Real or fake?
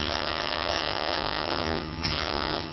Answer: fake